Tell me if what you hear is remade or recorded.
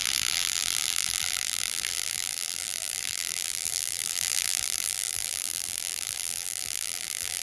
remade